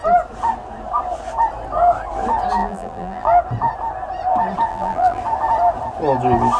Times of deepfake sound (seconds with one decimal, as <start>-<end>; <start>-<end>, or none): 2.6-3.4; 4.7-5.2